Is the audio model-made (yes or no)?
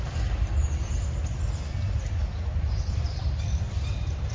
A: no